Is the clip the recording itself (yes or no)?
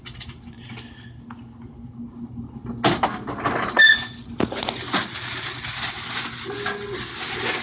yes